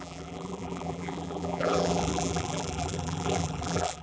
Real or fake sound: fake